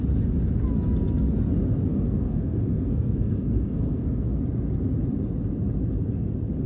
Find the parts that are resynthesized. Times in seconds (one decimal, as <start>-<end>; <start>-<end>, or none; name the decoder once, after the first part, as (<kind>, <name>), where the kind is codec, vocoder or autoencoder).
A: 1.9-4.4 (codec, SNAC)